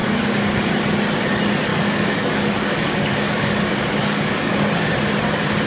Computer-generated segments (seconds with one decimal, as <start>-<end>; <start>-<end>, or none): 0.0-0.7; 1.7-4.9